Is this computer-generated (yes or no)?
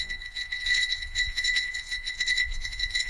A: yes